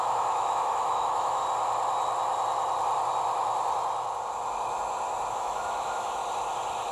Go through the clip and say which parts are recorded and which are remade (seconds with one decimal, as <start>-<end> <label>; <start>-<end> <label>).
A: 0.0-1.4 remade; 1.4-5.3 recorded; 5.3-6.2 remade; 6.2-6.9 recorded